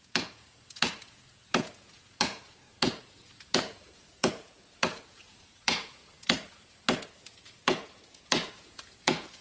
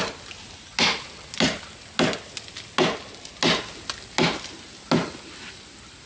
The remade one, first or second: first